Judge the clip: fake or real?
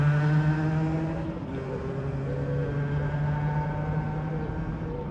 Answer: real